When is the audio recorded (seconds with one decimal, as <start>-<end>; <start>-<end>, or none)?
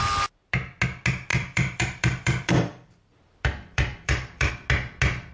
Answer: 0.0-1.3; 4.5-5.3